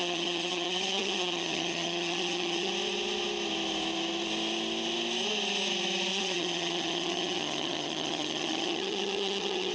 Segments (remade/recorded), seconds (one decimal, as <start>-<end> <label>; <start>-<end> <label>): 0.0-2.7 remade; 2.7-6.1 recorded; 6.1-9.7 remade